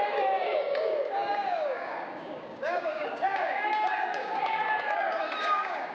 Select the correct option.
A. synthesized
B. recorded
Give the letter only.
A